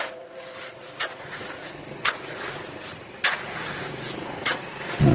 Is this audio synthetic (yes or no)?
yes